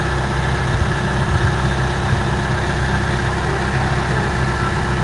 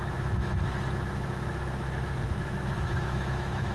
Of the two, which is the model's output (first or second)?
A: second